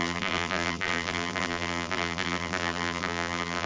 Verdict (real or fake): fake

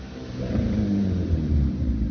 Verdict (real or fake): fake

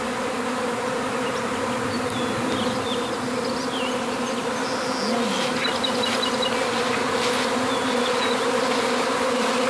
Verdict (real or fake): real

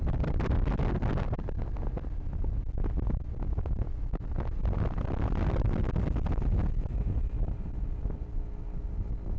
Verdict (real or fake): real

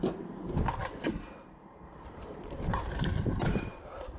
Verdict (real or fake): fake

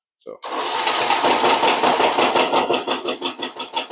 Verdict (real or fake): real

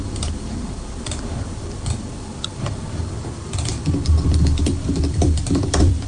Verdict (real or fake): fake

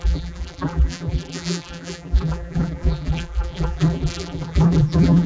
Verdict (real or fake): fake